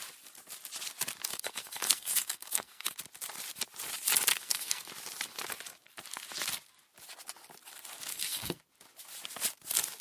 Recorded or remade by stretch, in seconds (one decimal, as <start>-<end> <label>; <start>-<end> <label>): 0.0-1.3 recorded; 1.3-3.0 remade; 3.0-4.3 recorded; 4.3-4.9 remade; 4.9-8.1 recorded; 8.1-8.6 remade; 8.6-10.0 recorded